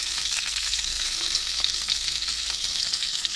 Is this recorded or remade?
remade